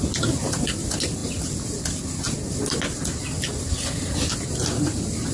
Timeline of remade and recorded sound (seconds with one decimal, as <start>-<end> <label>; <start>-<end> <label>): 0.0-1.2 remade; 1.2-4.4 recorded; 4.4-5.3 remade